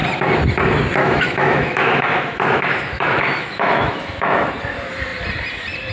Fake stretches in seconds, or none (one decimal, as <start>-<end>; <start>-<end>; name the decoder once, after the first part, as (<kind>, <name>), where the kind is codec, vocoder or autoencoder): 1.0-4.5 (autoencoder, DAC-VAE)